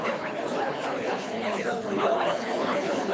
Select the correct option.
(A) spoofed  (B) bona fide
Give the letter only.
A